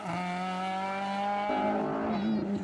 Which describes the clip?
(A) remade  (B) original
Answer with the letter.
B